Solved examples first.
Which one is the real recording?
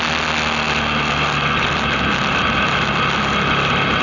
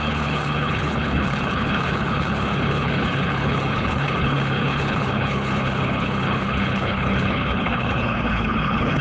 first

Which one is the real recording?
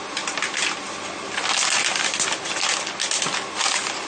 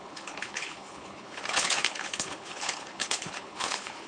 first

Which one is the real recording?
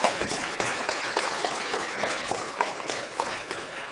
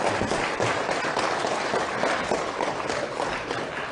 second